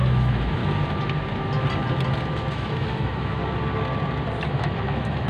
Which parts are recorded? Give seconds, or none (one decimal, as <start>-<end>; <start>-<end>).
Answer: 0.6-2.5; 3.4-4.5